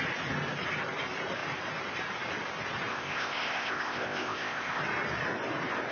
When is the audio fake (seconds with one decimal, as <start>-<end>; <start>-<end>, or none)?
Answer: 2.9-4.8